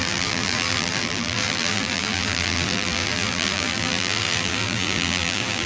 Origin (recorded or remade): remade